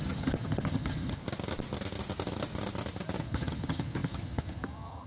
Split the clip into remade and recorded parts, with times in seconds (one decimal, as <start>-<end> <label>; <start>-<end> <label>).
0.0-1.2 remade; 1.2-3.2 recorded; 3.2-5.1 remade